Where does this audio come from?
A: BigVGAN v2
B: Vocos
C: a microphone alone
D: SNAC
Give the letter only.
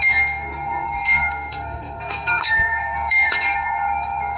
D